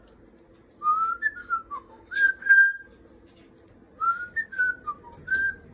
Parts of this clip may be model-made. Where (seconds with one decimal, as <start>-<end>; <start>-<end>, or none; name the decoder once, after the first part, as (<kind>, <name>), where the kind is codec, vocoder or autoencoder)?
1.4-2.3 (codec, DAC)

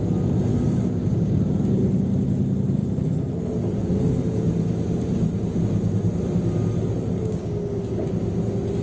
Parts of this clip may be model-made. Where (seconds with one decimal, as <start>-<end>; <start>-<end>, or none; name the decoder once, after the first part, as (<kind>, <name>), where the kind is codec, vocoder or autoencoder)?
0.5-1.4 (codec, DAC); 7.1-7.8

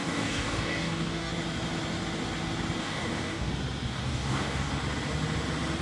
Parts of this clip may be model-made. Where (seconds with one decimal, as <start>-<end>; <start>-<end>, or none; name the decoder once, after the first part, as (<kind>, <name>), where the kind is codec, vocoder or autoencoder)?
0.0-1.3 (codec, DAC); 2.8-3.5; 4.0-4.7

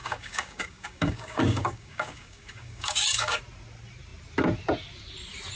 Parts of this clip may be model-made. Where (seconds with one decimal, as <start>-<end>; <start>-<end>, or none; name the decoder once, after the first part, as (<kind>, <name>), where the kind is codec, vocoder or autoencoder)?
0.0-3.4 (codec, DAC)

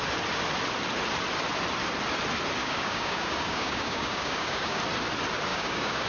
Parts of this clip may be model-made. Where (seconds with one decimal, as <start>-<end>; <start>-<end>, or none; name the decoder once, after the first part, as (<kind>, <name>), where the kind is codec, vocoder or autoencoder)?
2.6-4.8 (codec, DAC); 5.5-6.1

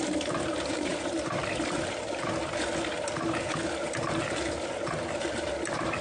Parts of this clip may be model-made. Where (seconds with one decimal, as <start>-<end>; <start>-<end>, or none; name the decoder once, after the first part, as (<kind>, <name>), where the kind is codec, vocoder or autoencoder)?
none